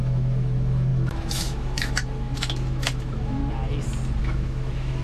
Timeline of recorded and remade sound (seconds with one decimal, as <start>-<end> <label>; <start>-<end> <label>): 0.0-3.4 remade; 3.4-4.2 recorded; 4.2-5.0 remade